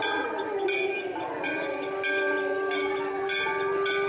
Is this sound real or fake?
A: real